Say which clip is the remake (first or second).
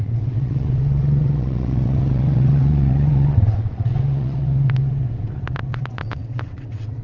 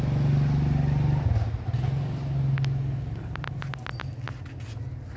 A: first